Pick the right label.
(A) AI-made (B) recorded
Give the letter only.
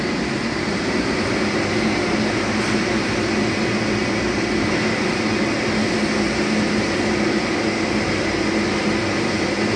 B